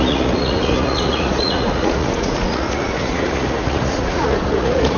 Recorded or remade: remade